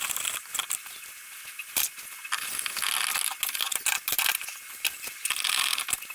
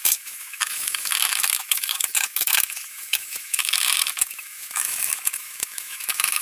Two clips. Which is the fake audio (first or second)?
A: second